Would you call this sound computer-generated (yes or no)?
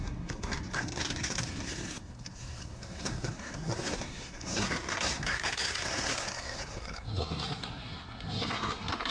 yes